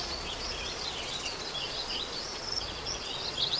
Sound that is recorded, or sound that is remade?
remade